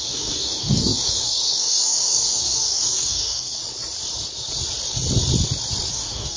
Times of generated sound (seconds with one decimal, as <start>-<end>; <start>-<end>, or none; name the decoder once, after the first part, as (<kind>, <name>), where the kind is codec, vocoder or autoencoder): 0.0-3.6 (codec, DAC); 5.9-6.4